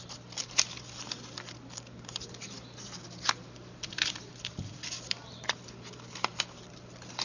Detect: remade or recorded recorded